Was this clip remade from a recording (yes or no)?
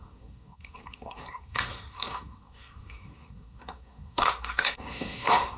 yes